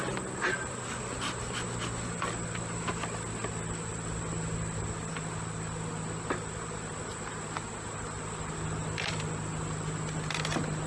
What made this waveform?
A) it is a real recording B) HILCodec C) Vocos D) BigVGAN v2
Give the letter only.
A